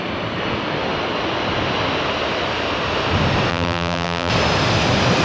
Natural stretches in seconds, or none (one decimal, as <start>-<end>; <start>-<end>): 0.0-3.5; 4.3-5.2